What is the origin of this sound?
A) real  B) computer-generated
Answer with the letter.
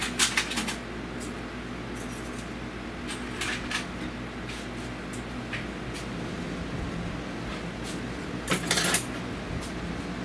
A